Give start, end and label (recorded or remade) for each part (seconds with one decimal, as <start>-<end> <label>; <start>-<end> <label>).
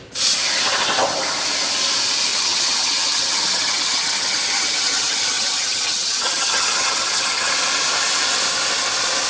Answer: 0.0-2.3 recorded; 2.3-7.5 remade; 7.5-9.3 recorded